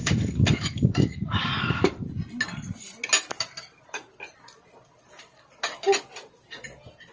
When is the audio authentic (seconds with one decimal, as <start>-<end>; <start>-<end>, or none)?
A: 1.8-7.1